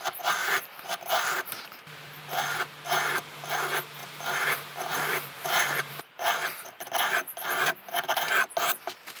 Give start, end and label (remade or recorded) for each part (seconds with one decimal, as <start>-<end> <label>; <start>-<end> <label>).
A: 0.0-0.4 recorded; 0.4-2.2 remade; 2.2-4.0 recorded; 4.0-5.9 remade; 5.9-9.2 recorded